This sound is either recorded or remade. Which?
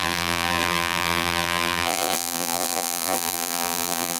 remade